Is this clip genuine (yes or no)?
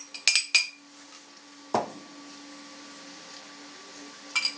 yes